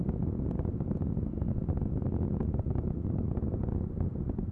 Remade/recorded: recorded